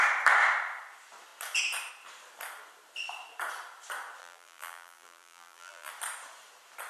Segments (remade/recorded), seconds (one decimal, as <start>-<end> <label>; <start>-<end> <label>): 0.0-4.2 recorded; 4.2-5.9 remade; 5.9-6.9 recorded